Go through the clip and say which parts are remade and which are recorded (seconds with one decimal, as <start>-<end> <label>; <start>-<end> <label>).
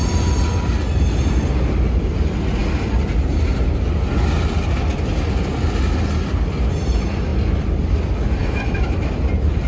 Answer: 0.0-8.4 recorded; 8.4-9.1 remade; 9.1-9.7 recorded